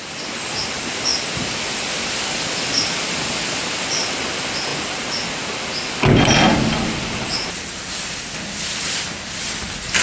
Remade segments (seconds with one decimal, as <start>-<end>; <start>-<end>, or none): 1.1-2.4